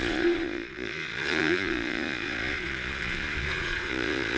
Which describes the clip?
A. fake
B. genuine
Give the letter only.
A